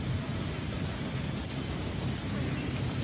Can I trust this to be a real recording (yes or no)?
yes